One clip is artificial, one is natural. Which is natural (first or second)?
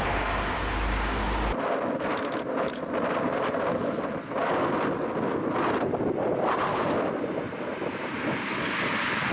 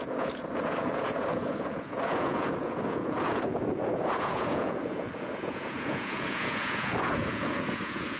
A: first